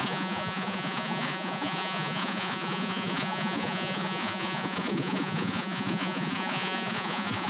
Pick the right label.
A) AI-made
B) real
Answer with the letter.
A